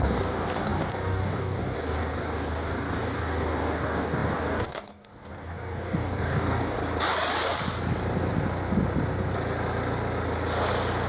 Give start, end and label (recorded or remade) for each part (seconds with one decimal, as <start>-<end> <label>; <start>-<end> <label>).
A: 0.0-6.8 remade; 6.8-11.1 recorded